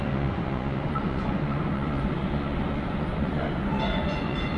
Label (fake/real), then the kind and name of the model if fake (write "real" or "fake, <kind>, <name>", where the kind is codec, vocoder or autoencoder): fake, vocoder, Vocos